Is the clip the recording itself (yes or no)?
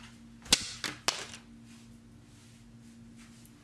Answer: yes